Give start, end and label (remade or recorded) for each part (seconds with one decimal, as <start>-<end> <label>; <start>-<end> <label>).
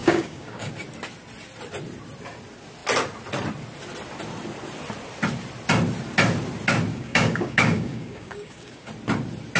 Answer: 0.0-0.7 remade; 0.7-6.9 recorded; 6.9-8.9 remade; 8.9-9.6 recorded